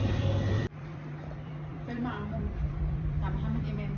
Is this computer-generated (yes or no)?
yes